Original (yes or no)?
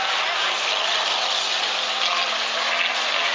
yes